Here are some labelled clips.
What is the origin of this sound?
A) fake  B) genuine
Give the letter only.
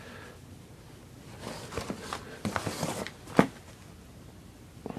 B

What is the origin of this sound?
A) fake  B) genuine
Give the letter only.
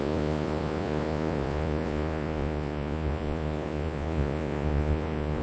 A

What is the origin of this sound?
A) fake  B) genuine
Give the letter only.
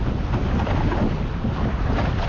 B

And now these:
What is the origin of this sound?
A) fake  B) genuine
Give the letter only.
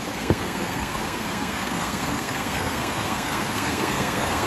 A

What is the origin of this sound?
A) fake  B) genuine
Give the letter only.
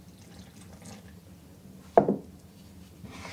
B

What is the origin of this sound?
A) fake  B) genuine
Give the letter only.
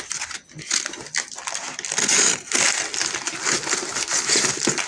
B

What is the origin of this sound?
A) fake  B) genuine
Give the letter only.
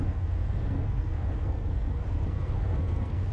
A